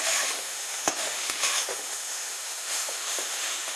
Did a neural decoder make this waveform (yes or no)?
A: yes